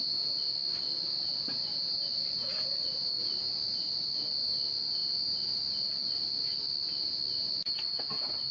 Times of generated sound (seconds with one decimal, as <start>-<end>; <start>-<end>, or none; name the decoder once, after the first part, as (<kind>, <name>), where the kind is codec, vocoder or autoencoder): none